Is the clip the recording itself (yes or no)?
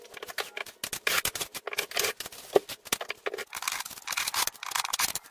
yes